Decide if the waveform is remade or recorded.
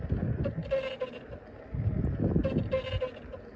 recorded